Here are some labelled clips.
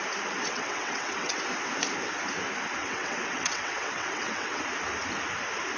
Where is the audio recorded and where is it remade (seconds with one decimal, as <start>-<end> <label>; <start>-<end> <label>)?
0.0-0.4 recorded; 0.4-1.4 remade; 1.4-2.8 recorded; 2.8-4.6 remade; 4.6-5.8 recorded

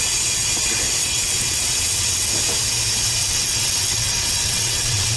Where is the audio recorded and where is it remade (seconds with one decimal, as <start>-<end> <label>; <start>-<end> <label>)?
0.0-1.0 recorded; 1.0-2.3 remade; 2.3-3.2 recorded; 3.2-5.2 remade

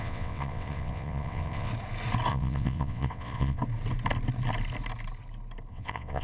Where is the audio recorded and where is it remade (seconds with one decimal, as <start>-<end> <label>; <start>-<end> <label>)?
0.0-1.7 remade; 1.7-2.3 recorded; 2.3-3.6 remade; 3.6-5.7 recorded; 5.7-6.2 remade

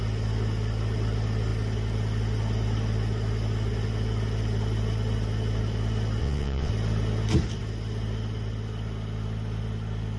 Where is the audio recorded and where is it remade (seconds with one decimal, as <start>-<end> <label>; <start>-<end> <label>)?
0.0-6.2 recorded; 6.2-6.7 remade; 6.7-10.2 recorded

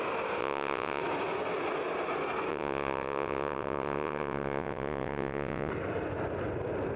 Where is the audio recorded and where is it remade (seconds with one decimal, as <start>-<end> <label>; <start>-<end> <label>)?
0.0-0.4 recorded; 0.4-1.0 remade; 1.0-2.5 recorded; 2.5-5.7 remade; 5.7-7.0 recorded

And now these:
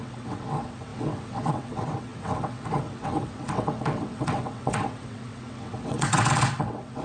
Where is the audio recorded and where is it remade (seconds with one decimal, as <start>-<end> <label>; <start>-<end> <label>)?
0.0-7.0 remade

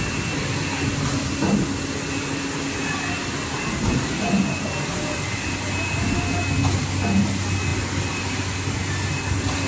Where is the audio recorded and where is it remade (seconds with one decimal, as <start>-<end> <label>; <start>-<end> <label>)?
0.0-9.7 recorded

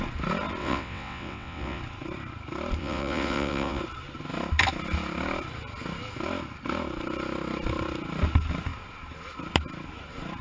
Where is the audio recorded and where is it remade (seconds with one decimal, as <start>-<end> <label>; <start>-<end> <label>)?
0.0-0.6 recorded; 0.6-1.8 remade; 1.8-2.8 recorded; 2.8-3.8 remade; 3.8-10.4 recorded